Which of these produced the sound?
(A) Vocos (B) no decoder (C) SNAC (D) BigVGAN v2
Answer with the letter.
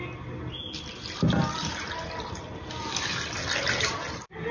B